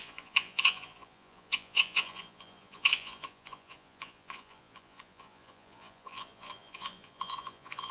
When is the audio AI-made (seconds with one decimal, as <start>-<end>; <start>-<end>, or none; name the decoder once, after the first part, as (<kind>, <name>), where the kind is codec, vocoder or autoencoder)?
0.0-7.9 (vocoder, Vocos)